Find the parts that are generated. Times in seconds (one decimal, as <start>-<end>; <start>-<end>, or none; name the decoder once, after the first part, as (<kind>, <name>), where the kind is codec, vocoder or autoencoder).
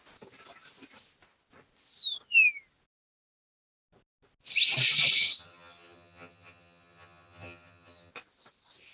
5.4-8.1 (vocoder, HiFi-GAN)